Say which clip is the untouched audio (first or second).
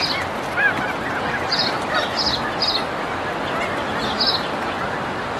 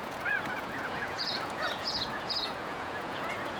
first